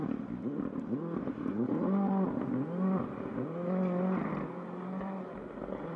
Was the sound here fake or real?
real